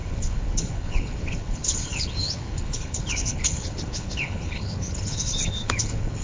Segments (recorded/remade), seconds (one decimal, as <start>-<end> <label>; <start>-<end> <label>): 0.0-6.2 remade